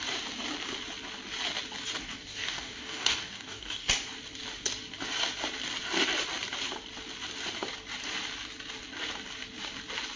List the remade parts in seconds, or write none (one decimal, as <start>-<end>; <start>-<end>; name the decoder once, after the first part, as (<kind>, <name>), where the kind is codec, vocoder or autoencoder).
2.0-3.9 (codec, DAC)